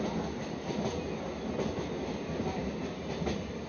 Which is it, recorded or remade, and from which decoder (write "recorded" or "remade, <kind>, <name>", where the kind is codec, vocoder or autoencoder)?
recorded